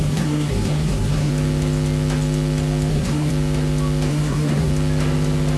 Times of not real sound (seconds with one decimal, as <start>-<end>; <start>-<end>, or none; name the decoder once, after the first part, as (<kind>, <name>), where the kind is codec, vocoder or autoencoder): 0.0-1.3 (codec, SNAC); 2.9-3.3; 4.1-4.7

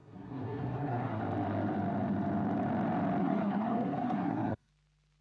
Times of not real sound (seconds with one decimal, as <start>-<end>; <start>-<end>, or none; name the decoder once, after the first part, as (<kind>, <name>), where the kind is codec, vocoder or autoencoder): 0.0-1.2 (codec, SNAC); 3.2-4.7

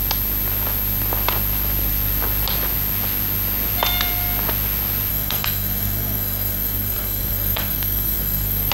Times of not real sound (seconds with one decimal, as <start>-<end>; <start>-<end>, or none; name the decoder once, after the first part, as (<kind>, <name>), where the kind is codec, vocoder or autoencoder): 5.1-8.7 (codec, SNAC)

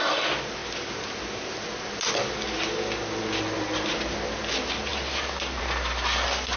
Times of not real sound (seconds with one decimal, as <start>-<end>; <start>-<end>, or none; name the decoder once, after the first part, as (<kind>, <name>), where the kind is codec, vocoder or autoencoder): none

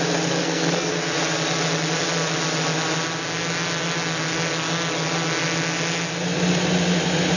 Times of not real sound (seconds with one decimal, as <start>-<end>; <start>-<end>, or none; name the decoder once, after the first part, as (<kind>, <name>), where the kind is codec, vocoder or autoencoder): 0.4-0.9 (codec, SNAC)